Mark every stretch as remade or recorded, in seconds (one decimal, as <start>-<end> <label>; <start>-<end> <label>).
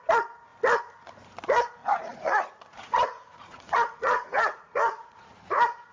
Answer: 0.0-1.8 recorded; 1.8-5.3 remade; 5.3-5.9 recorded